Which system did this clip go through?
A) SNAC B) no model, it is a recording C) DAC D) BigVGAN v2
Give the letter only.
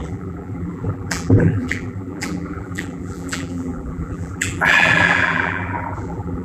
D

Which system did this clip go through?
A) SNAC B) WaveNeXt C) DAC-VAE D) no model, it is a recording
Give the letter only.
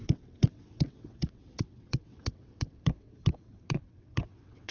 B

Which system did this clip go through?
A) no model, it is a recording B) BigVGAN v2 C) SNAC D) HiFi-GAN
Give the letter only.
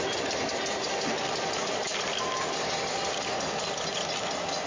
A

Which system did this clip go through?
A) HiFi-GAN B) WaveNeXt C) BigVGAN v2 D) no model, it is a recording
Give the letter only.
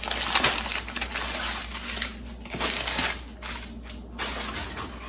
D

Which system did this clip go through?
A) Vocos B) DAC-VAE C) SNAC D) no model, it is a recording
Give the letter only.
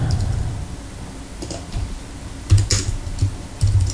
D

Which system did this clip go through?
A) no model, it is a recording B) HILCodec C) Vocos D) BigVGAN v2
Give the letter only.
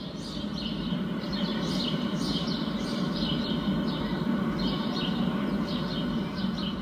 D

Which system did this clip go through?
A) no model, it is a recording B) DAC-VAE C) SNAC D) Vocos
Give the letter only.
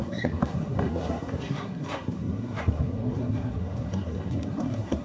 C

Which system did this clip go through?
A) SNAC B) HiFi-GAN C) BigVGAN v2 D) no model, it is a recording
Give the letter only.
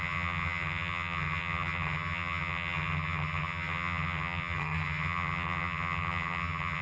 B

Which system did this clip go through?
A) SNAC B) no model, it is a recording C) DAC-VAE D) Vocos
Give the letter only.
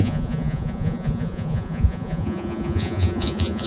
D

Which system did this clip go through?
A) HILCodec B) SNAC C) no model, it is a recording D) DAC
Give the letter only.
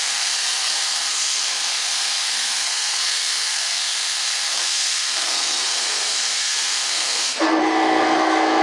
B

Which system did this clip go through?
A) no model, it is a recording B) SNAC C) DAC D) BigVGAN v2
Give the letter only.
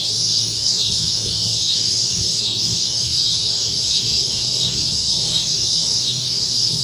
C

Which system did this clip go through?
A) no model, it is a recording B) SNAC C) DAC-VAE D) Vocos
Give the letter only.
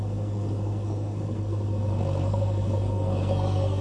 B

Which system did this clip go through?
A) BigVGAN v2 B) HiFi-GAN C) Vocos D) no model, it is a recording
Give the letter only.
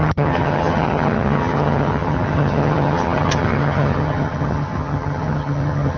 B